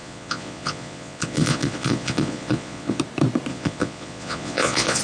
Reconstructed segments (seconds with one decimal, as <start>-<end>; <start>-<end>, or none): 0.0-3.0; 3.5-5.0